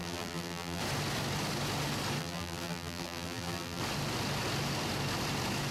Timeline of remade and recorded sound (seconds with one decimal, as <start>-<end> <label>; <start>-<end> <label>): 0.0-0.8 remade; 0.8-2.2 recorded; 2.2-3.8 remade; 3.8-5.7 recorded